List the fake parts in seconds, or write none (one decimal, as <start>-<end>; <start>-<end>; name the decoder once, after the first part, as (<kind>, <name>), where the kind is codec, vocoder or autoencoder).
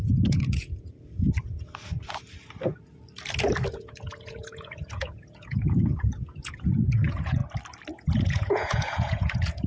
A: 0.0-0.9 (vocoder, Vocos); 3.7-7.4; 7.9-9.7